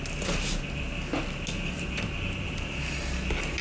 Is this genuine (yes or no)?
yes